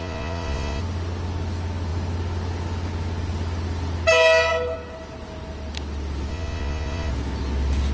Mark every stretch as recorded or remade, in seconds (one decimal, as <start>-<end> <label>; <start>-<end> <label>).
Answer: 0.0-0.8 remade; 0.8-6.3 recorded; 6.3-7.1 remade; 7.1-7.9 recorded